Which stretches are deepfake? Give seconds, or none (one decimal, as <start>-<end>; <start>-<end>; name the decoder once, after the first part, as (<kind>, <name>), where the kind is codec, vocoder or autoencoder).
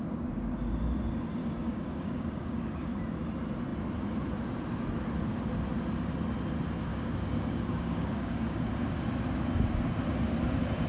1.4-3.0 (codec, DAC); 6.9-8.7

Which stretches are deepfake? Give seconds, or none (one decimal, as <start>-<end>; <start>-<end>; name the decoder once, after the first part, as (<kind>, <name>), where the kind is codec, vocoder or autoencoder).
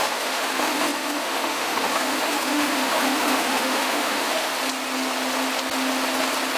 0.0-4.5 (autoencoder, DAC-VAE)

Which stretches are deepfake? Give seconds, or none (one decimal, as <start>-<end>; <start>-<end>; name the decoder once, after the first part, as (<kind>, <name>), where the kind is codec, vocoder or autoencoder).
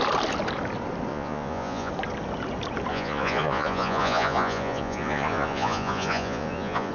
1.1-1.9 (vocoder, Vocos); 2.9-6.9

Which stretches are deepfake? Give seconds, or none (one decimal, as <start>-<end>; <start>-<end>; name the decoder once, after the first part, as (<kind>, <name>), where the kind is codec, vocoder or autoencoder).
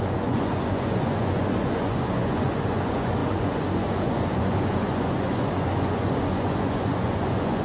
0.0-7.6 (vocoder, Vocos)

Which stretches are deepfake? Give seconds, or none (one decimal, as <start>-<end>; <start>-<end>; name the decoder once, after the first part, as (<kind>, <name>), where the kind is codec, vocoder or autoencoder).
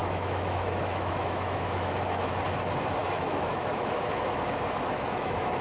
0.0-2.3 (autoencoder, DAC-VAE); 3.0-5.6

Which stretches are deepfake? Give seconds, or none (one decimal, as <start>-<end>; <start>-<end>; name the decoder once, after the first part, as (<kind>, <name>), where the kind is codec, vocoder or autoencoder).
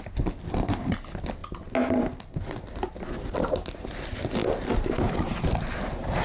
4.4-5.0 (vocoder, BigVGAN v2)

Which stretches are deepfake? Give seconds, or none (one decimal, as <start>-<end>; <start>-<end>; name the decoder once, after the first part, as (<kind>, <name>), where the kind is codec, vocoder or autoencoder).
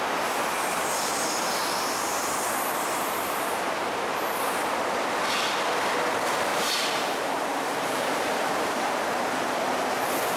1.6-4.4 (vocoder, BigVGAN v2); 6.5-9.0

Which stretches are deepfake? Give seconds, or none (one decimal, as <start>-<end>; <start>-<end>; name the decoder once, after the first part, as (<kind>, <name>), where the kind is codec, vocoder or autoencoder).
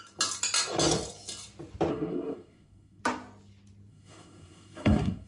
1.9-3.0 (codec, SNAC); 3.9-5.3